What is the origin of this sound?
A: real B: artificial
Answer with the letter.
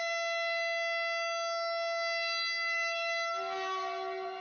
A